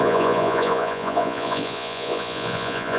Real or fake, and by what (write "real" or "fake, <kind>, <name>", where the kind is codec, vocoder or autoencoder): fake, vocoder, Vocos